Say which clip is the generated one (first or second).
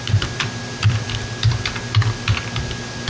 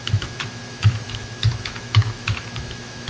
second